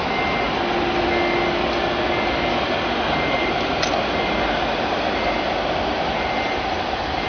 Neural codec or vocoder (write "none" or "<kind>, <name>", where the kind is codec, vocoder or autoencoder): none